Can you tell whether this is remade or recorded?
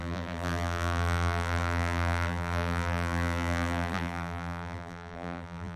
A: remade